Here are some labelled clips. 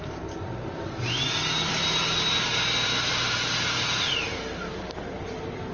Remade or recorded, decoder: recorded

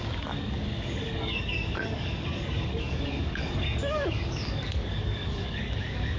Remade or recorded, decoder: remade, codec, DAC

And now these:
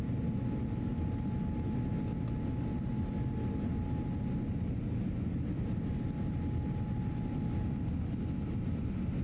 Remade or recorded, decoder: recorded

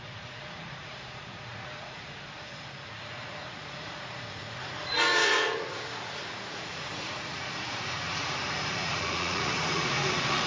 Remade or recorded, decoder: remade, vocoder, Vocos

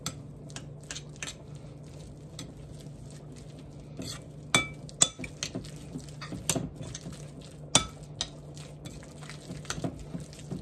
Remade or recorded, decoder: recorded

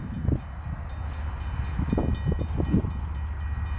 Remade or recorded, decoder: recorded